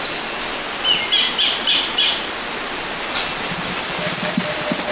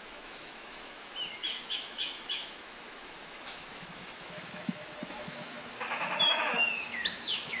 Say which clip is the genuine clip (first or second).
first